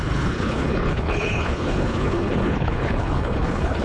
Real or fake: fake